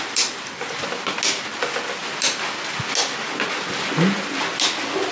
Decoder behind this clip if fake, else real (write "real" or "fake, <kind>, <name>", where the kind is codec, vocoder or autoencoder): real